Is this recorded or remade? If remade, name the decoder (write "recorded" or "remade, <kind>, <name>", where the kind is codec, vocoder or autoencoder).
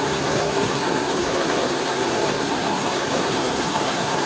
remade, codec, SNAC